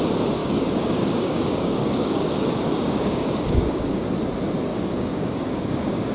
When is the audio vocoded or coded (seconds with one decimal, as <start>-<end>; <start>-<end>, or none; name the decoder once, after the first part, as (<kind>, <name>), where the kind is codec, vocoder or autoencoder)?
0.4-4.1 (codec, DAC); 4.7-6.1